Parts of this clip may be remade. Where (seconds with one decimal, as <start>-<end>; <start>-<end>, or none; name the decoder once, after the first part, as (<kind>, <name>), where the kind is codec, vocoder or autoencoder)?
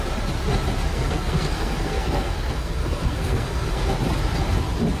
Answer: 0.9-3.9 (codec, SNAC)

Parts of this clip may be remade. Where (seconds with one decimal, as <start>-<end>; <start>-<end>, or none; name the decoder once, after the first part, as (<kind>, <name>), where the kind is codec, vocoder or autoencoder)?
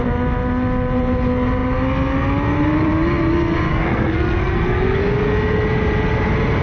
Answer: 3.7-5.0 (codec, SNAC)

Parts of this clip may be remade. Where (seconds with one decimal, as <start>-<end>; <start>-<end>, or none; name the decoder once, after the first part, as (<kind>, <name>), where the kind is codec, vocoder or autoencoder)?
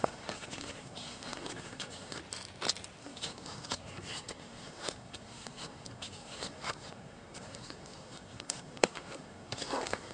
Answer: 0.0-2.2 (codec, SNAC); 3.0-10.1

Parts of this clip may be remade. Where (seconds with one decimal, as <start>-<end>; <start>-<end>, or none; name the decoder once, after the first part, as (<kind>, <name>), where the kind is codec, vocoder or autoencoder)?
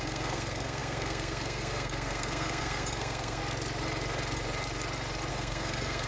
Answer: 0.0-3.4 (codec, SNAC); 5.3-6.1